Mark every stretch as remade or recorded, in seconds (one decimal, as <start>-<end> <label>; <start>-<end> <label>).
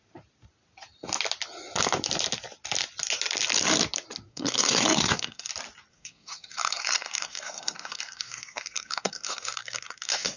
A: 0.0-4.3 recorded; 4.3-5.5 remade; 5.5-5.9 recorded; 5.9-10.4 remade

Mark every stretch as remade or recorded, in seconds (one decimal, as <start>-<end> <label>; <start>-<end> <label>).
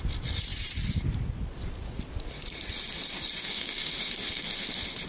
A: 0.0-3.4 recorded; 3.4-5.1 remade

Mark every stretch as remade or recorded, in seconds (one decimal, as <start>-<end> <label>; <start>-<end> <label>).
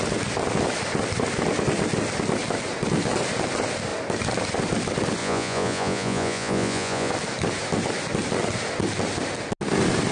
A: 0.0-5.2 recorded; 5.2-7.1 remade; 7.1-10.1 recorded